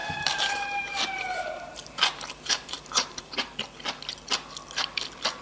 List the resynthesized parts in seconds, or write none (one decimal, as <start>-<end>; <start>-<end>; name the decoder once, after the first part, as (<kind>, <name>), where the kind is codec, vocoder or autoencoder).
0.0-3.2 (vocoder, BigVGAN v2)